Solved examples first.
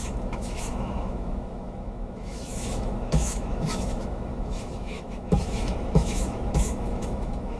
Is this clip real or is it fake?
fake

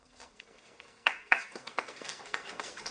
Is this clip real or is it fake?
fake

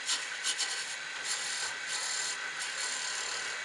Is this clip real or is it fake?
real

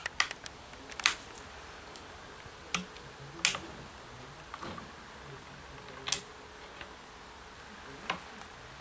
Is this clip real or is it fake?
real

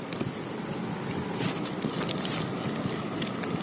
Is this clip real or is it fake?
real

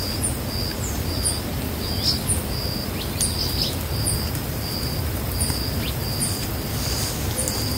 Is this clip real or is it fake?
real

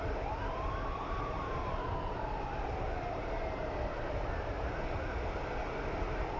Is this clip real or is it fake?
real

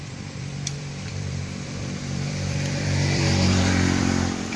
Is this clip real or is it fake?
fake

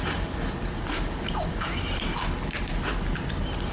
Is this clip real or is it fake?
real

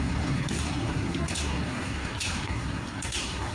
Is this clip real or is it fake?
fake